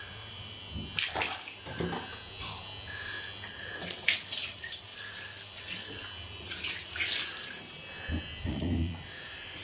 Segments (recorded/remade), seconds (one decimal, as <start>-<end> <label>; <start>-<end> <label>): 0.0-0.6 remade; 0.6-3.5 recorded; 3.5-4.9 remade; 4.9-6.4 recorded; 6.4-7.1 remade; 7.1-8.4 recorded; 8.4-9.6 remade